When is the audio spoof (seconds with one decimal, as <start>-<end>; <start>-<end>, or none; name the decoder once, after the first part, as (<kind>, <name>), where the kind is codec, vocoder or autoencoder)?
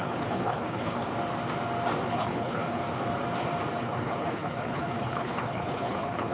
0.0-1.0 (codec, HILCodec); 2.1-2.8; 3.8-6.3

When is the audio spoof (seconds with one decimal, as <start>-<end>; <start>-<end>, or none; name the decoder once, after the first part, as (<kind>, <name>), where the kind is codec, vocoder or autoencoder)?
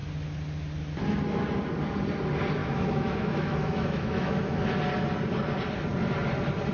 2.6-4.6 (autoencoder, DAC-VAE)